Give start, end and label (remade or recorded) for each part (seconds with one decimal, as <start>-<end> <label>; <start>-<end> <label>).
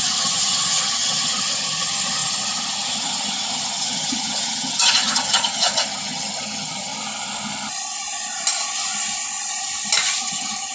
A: 0.0-6.9 remade; 6.9-10.2 recorded; 10.2-10.7 remade